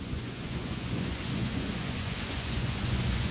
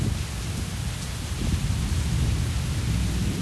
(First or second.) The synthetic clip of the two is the first